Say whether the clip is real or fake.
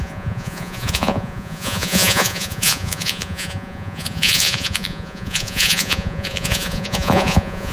fake